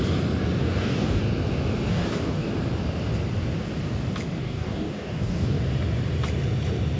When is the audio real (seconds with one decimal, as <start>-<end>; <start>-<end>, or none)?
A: 0.0-0.6; 1.2-1.9; 2.5-4.4; 5.6-7.0